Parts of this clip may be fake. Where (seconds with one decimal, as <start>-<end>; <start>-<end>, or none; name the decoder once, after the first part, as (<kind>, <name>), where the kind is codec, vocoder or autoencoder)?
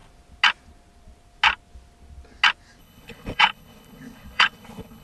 2.8-5.0 (codec, HILCodec)